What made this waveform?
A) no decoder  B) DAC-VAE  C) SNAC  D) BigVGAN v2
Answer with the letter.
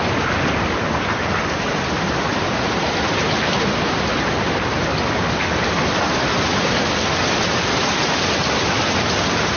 A